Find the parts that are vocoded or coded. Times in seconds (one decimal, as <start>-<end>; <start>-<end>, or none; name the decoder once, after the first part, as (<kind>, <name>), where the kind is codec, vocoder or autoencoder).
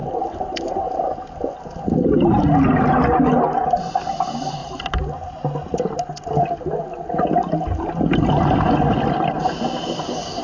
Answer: none